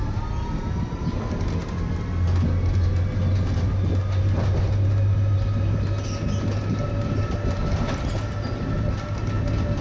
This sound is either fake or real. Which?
real